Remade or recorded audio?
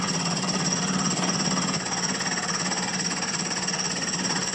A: remade